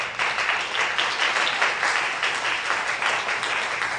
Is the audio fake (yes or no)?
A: no